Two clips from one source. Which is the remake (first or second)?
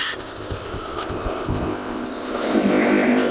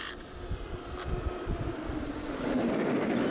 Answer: first